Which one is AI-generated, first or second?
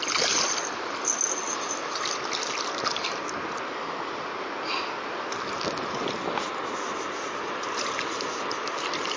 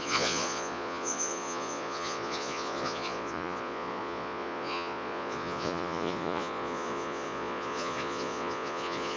second